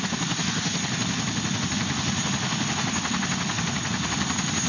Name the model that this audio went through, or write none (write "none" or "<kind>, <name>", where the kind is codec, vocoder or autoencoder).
none